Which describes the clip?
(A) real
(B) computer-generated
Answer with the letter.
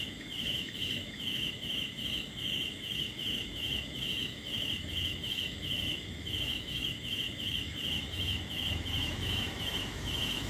B